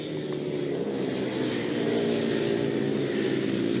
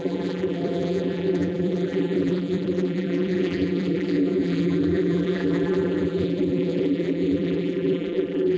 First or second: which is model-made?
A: second